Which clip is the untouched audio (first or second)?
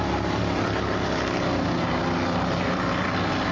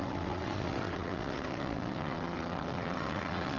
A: first